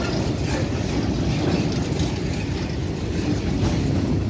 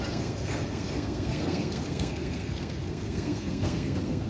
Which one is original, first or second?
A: first